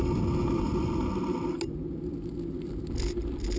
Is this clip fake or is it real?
real